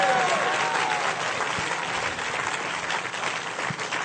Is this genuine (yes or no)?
yes